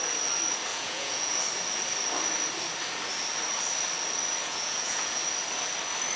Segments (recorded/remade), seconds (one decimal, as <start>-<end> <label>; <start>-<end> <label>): 0.0-0.7 recorded; 0.7-1.4 remade; 1.4-4.4 recorded; 4.4-5.2 remade; 5.2-6.2 recorded